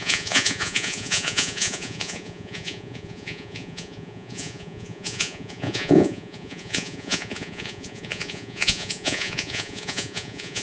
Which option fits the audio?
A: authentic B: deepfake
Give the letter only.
B